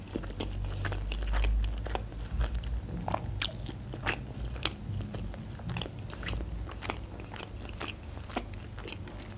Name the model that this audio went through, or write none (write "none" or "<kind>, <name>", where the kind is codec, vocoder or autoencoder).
none